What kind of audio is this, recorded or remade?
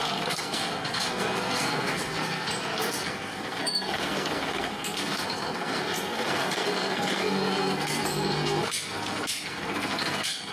remade